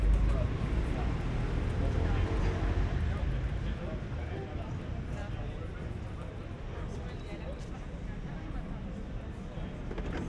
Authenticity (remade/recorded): recorded